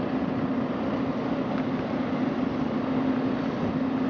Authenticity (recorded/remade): recorded